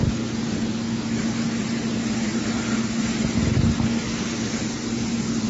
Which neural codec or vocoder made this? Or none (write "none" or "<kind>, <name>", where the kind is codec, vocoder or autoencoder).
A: none